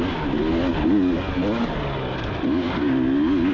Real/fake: real